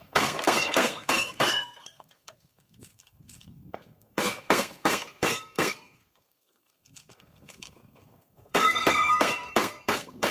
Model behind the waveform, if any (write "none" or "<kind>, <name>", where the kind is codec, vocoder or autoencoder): codec, SNAC